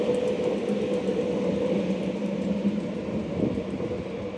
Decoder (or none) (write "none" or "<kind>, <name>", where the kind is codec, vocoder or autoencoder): none